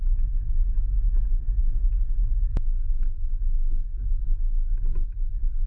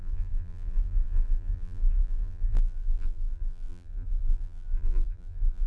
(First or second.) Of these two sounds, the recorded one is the first